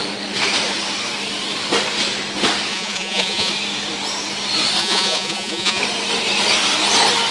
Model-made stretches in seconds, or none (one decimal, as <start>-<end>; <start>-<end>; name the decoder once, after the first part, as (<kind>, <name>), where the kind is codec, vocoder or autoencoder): 2.7-3.5 (vocoder, Vocos); 4.8-5.8